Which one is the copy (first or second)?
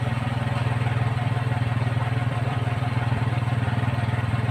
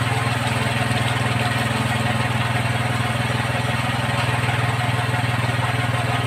first